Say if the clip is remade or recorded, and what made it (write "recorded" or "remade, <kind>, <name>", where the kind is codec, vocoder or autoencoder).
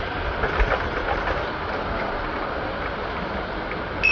recorded